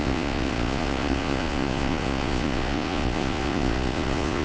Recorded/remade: remade